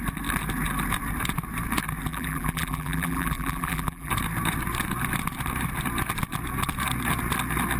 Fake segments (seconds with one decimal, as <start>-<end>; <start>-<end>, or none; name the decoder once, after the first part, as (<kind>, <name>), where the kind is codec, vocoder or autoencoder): 2.1-4.1 (vocoder, BigVGAN v2)